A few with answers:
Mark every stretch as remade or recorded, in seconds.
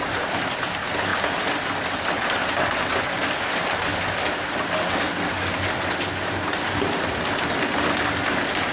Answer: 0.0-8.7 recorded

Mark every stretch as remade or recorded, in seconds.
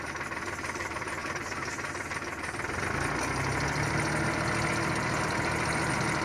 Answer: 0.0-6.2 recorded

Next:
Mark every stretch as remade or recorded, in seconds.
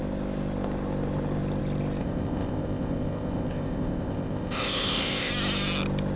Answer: 0.0-2.0 recorded; 2.0-5.3 remade; 5.3-6.2 recorded